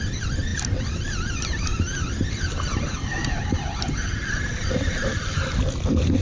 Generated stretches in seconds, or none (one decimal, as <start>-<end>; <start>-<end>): none